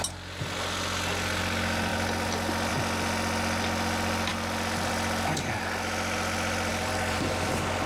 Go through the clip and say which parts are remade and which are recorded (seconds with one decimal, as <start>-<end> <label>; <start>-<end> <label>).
0.0-6.7 recorded; 6.7-7.3 remade; 7.3-7.9 recorded